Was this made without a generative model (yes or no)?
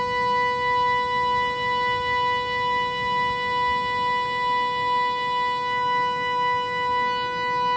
yes